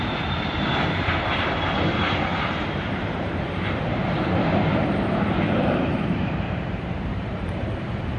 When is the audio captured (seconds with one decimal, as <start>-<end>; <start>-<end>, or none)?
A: none